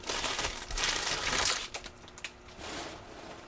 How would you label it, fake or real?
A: real